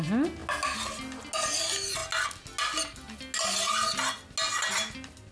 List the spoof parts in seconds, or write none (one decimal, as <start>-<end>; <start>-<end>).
none